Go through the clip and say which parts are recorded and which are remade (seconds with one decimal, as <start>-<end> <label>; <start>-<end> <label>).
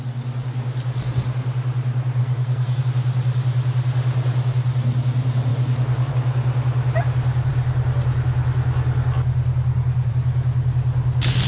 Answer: 0.0-2.2 recorded; 2.2-2.8 remade; 2.8-11.5 recorded